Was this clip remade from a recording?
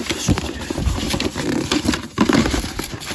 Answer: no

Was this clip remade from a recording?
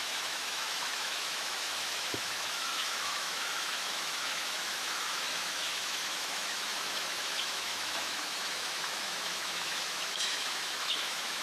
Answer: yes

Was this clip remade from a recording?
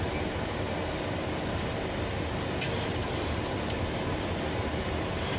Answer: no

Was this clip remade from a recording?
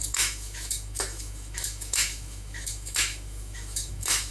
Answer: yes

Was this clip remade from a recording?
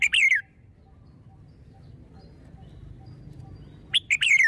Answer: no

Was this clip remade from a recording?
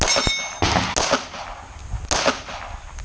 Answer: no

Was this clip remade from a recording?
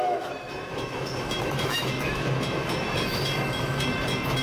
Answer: yes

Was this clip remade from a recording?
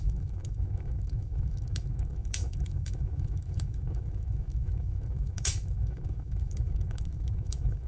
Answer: yes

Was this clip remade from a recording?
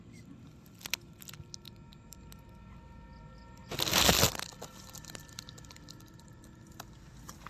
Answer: no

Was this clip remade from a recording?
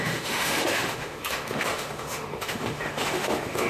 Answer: yes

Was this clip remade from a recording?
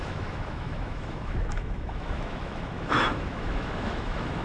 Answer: yes